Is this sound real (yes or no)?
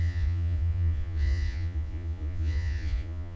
no